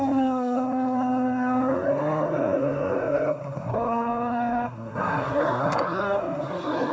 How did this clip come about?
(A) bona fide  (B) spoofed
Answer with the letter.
B